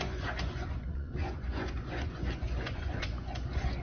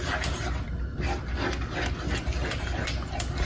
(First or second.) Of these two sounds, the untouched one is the second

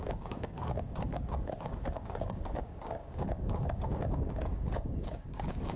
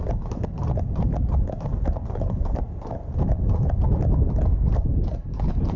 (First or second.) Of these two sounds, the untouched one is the second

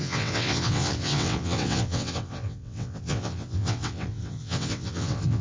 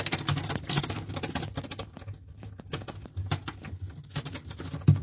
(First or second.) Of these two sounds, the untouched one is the second